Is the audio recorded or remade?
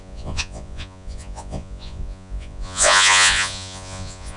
remade